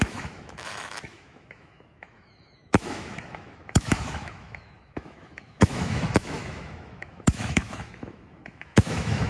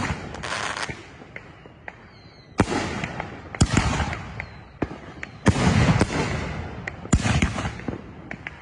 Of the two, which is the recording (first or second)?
second